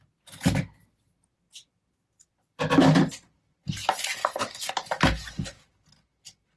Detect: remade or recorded recorded